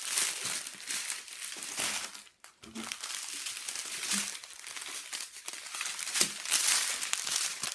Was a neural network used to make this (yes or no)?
no